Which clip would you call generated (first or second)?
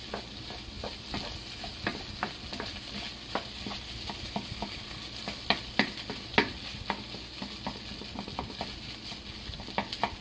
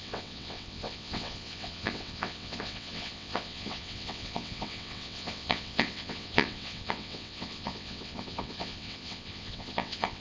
second